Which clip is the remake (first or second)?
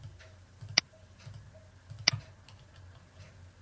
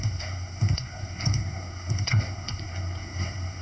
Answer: second